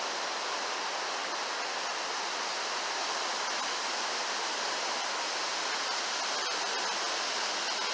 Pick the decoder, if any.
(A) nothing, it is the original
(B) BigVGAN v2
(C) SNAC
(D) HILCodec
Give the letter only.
A